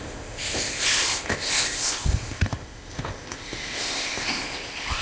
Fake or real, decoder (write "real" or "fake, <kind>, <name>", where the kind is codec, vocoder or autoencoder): fake, codec, ZipCodec